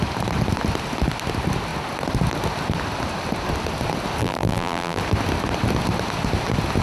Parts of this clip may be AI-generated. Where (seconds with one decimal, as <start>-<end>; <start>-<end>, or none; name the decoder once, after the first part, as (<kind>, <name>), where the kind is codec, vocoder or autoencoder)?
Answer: 4.2-5.0 (vocoder, BigVGAN v2)